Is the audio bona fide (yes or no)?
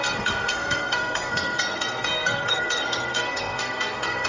no